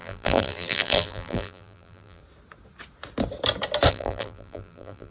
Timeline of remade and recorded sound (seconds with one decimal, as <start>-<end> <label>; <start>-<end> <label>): 0.0-2.2 remade; 2.2-3.9 recorded; 3.9-5.1 remade